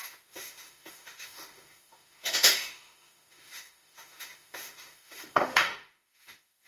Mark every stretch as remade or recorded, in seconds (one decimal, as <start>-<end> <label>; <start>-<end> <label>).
0.0-6.7 remade